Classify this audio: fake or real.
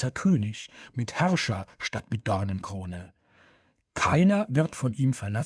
fake